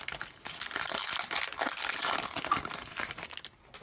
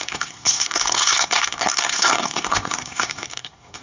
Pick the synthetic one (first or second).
second